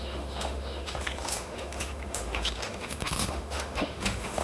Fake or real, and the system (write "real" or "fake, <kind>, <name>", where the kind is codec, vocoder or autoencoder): fake, autoencoder, DAC-VAE